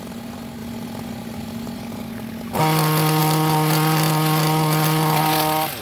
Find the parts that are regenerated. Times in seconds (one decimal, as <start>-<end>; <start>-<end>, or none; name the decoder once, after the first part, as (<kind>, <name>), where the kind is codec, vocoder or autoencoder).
none